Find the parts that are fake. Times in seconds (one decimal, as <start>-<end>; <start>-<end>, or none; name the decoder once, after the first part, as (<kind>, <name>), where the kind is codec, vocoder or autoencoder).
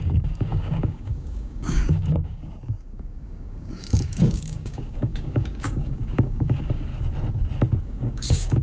0.0-6.9 (codec, DAC); 7.8-8.6